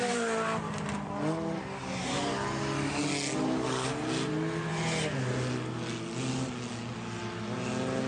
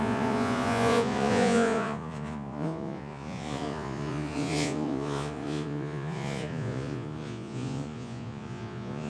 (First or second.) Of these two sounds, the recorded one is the first